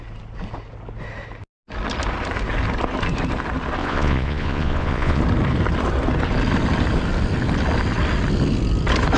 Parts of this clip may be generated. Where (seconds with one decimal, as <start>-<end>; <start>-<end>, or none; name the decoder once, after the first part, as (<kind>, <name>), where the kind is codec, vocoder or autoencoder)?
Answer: 3.8-5.2 (vocoder, Vocos)